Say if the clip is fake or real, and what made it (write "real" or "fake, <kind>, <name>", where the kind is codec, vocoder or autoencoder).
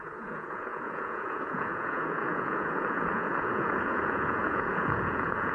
fake, vocoder, Vocos